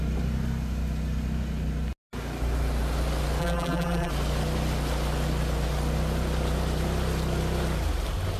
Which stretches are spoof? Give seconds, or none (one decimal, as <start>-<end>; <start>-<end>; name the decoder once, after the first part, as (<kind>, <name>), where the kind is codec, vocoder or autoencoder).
3.4-4.1 (vocoder, BigVGAN v2)